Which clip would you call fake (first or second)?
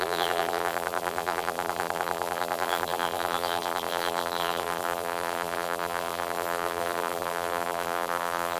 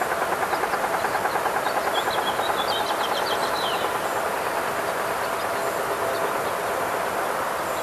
first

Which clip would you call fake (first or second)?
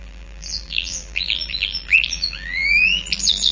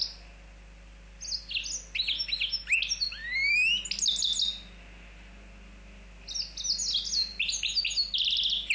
first